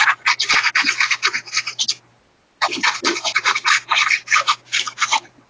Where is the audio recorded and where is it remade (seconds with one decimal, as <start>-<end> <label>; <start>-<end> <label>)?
0.0-2.1 recorded; 2.1-5.5 remade